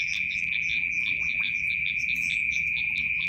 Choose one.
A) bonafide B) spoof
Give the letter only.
B